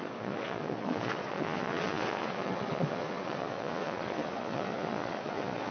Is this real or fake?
fake